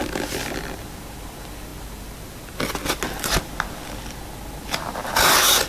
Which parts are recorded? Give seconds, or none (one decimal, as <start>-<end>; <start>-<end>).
0.0-5.7